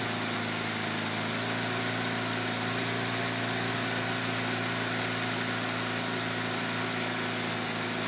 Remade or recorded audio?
recorded